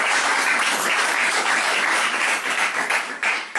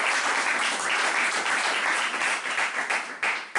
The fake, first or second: first